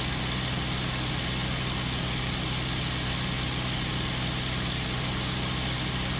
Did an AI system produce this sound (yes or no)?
no